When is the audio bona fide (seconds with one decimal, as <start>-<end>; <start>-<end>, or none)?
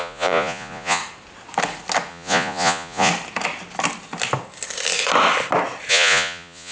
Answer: 1.0-2.1; 3.1-5.9